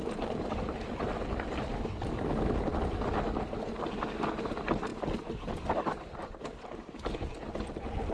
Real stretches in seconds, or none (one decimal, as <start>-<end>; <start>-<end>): 0.5-6.2; 7.3-8.1